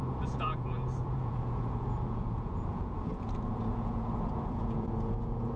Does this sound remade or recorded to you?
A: remade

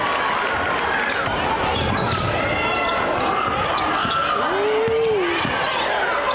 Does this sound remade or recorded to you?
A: recorded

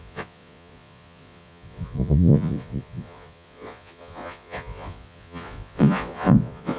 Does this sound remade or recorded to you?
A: remade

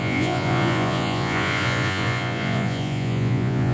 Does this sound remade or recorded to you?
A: remade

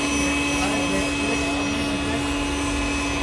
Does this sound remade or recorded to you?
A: recorded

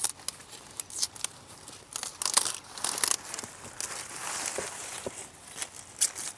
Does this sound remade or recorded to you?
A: recorded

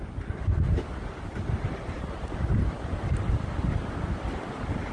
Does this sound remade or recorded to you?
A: recorded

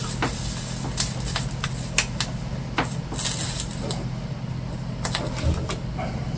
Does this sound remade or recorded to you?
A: recorded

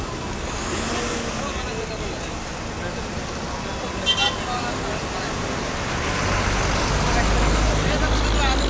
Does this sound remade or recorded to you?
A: recorded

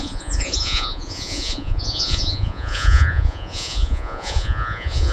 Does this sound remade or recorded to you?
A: remade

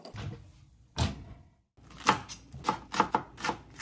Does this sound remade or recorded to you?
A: recorded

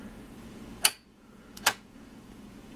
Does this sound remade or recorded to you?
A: remade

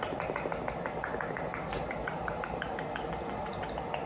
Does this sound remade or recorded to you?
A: recorded